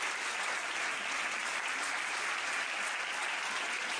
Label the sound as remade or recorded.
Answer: recorded